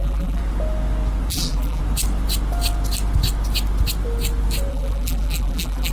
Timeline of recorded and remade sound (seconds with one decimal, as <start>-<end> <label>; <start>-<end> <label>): 0.0-0.4 remade; 0.4-1.3 recorded; 1.3-1.8 remade; 1.8-4.7 recorded; 4.7-5.9 remade